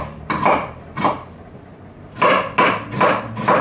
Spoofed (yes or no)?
no